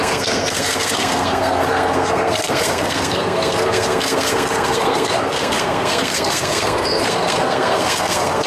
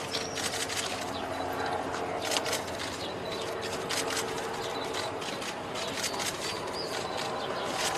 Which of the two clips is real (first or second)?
second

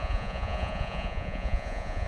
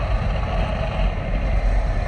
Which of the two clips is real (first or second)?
second